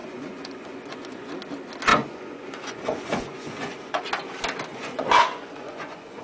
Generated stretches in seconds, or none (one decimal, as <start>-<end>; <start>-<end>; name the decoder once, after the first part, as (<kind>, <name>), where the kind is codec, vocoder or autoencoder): 0.0-1.3 (vocoder, Vocos); 1.9-4.0; 4.7-6.2